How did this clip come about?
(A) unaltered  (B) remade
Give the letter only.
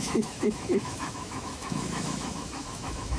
B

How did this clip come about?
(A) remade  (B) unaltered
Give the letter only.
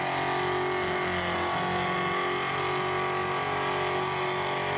B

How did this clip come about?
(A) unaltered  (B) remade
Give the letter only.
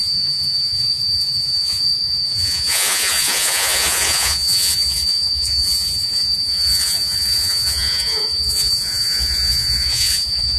B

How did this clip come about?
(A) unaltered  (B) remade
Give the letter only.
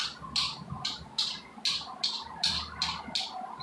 A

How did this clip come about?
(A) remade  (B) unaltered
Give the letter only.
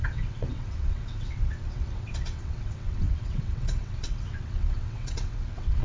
A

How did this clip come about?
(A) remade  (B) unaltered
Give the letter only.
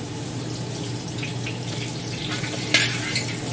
B